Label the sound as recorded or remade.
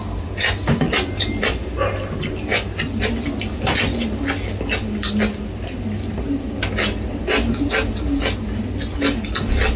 recorded